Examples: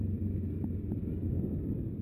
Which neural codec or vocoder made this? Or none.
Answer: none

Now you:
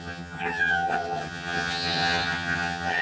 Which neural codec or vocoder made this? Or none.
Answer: vocoder, HiFi-GAN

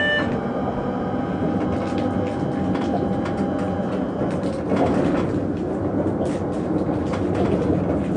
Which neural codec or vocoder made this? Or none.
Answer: none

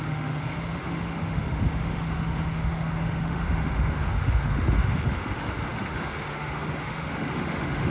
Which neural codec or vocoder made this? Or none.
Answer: autoencoder, DAC-VAE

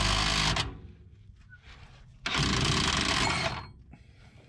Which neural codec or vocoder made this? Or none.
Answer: none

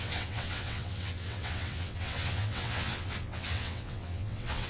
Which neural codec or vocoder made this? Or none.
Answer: vocoder, WaveNeXt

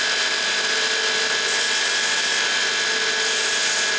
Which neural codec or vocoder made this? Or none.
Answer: none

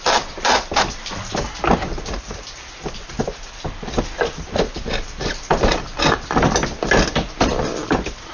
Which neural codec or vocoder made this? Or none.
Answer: vocoder, BigVGAN v2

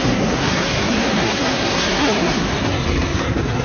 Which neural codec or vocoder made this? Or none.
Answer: codec, SNAC